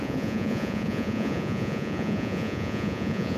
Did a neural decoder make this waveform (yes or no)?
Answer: yes